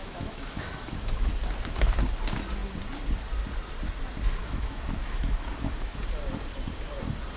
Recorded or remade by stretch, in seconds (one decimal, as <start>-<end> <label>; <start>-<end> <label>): 0.0-1.3 remade; 1.3-4.4 recorded; 4.4-6.0 remade; 6.0-7.4 recorded